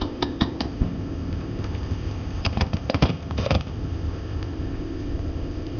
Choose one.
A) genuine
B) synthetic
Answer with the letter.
B